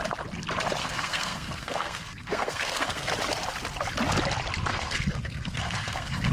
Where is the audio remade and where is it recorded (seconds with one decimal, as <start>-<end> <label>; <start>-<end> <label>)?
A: 0.0-0.8 recorded; 0.8-3.1 remade; 3.1-4.7 recorded; 4.7-6.3 remade